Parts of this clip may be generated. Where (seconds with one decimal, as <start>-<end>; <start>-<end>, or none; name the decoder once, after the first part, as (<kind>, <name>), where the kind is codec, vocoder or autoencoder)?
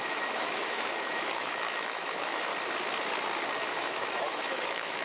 0.0-2.5 (autoencoder, DAC-VAE); 3.7-5.0